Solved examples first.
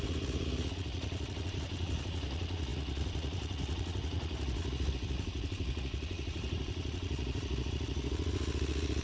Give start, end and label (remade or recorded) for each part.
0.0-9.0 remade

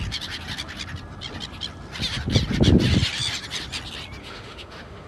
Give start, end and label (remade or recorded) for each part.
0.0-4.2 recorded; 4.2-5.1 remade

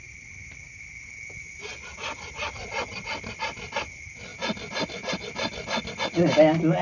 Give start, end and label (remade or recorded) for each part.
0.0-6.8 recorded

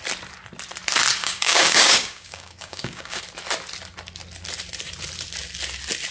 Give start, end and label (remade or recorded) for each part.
0.0-1.2 recorded; 1.2-3.2 remade; 3.2-6.1 recorded